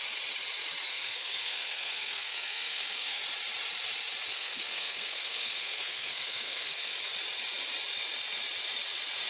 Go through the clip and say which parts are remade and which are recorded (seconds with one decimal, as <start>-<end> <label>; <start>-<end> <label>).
0.0-0.9 recorded; 0.9-3.2 remade; 3.2-4.3 recorded; 4.3-6.9 remade; 6.9-9.3 recorded